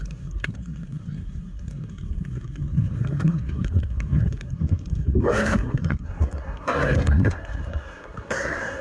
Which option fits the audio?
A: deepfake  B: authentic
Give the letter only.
A